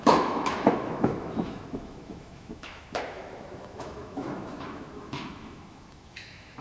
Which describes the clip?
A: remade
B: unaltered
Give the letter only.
A